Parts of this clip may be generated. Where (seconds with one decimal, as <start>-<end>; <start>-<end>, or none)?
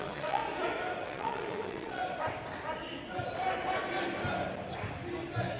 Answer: 0.0-0.4; 1.0-2.0